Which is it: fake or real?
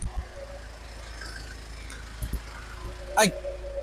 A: real